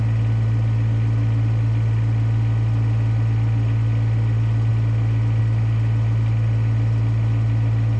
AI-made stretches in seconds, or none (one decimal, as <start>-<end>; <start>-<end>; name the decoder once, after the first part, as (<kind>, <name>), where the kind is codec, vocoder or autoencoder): none